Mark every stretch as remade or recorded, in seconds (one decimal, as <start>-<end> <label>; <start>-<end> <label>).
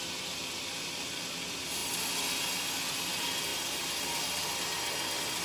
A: 0.0-3.5 recorded; 3.5-4.2 remade; 4.2-5.4 recorded